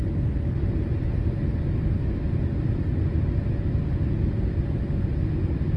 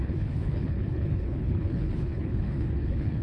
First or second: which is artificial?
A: second